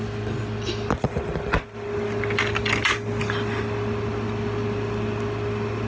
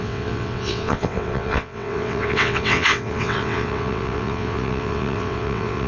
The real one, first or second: first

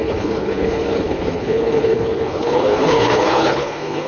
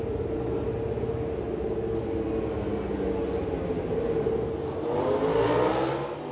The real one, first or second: second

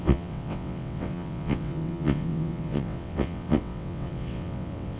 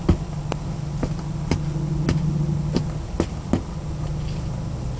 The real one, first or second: second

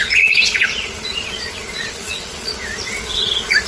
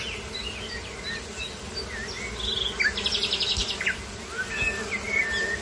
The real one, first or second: second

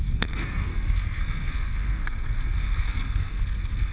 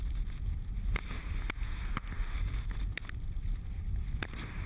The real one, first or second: second